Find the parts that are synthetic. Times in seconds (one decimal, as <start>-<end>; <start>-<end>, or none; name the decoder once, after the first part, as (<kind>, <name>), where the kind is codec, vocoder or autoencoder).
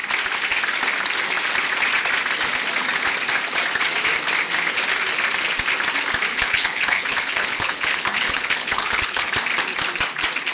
6.3-9.3 (codec, HILCodec)